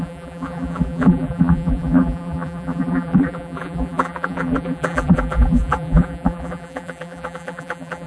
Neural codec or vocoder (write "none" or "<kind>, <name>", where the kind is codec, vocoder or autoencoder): vocoder, BigVGAN v2